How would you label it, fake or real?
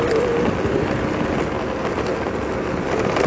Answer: real